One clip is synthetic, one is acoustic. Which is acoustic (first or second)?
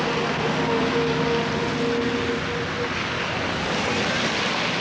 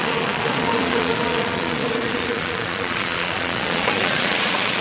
first